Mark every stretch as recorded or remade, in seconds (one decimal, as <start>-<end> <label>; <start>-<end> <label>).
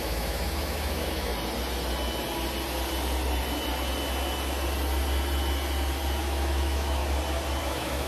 0.0-1.3 remade; 1.3-6.2 recorded; 6.2-7.0 remade; 7.0-7.6 recorded; 7.6-8.1 remade